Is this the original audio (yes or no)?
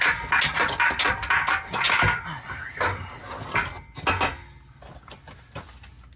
yes